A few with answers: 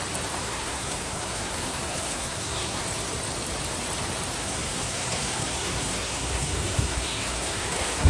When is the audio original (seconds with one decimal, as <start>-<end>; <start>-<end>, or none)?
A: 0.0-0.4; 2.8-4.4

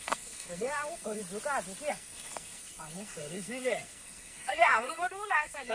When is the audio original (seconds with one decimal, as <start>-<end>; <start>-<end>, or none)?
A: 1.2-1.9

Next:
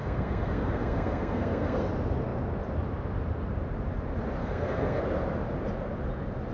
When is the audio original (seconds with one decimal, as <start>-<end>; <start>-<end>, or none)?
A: 1.9-4.4; 5.0-6.5